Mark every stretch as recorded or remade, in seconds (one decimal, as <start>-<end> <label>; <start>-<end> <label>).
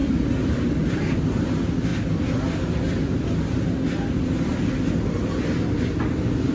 0.0-6.5 recorded